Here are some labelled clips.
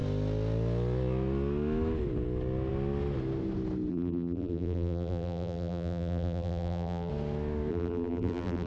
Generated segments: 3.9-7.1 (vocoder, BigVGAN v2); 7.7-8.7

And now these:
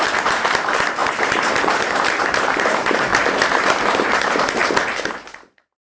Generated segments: 0.0-3.1 (vocoder, BigVGAN v2); 3.9-4.6; 5.4-5.9

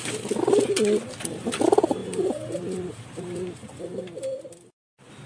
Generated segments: 2.0-4.0 (vocoder, BigVGAN v2)

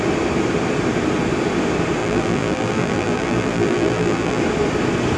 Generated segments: 2.0-4.4 (vocoder, BigVGAN v2)

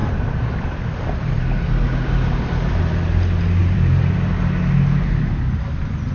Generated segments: 0.0-2.8 (vocoder, BigVGAN v2); 3.6-4.4

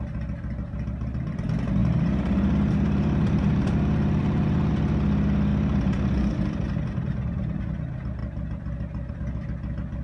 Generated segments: 1.8-4.7 (vocoder, BigVGAN v2); 5.5-7.6